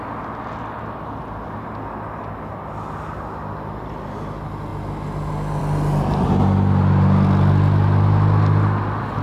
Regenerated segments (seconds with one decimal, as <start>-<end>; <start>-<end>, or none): none